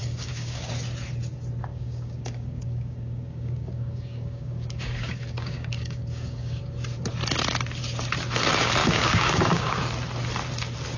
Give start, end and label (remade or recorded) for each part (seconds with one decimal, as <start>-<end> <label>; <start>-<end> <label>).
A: 0.0-0.7 remade; 0.7-1.7 recorded; 1.7-6.6 remade; 6.6-8.8 recorded; 8.8-9.8 remade; 9.8-11.0 recorded